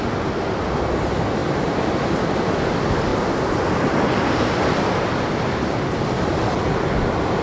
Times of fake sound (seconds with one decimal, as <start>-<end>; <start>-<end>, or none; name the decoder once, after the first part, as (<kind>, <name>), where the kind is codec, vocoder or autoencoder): 3.1-5.2 (vocoder, BigVGAN v2)